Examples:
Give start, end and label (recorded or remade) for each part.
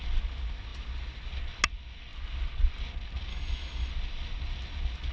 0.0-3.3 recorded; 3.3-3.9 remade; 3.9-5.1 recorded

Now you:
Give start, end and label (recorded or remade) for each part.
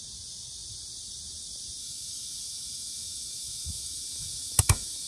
0.0-1.8 recorded; 1.8-5.1 remade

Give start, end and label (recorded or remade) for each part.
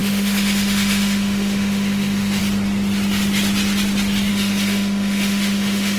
0.0-2.4 remade; 2.4-4.3 recorded; 4.3-6.0 remade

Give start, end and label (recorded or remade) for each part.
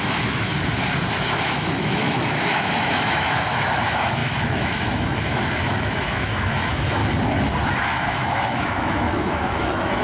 0.0-0.5 remade; 0.5-1.3 recorded; 1.3-7.0 remade; 7.0-7.7 recorded; 7.7-10.0 remade